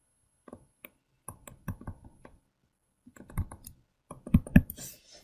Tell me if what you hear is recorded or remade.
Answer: recorded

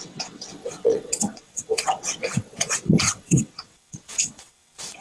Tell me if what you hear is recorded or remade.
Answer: remade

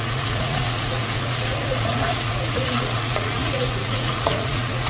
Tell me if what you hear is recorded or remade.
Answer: remade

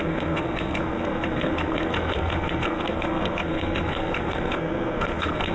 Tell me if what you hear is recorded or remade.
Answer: remade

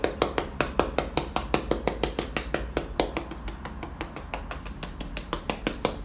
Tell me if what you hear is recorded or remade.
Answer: recorded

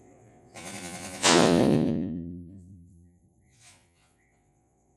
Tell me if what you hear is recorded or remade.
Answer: remade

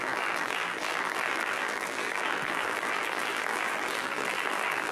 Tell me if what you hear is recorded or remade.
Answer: remade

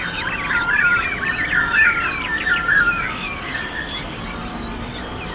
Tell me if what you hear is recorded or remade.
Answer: recorded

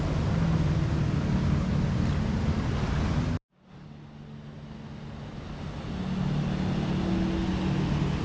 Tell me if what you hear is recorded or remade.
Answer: recorded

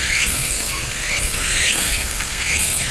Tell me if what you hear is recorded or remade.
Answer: remade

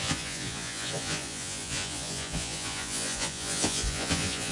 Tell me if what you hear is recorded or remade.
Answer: remade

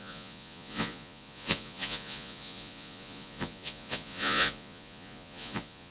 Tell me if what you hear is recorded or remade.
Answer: remade